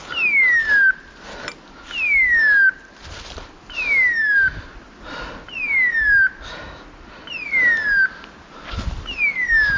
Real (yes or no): yes